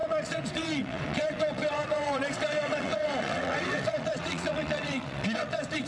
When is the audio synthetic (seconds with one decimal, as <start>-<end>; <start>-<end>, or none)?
0.0-5.9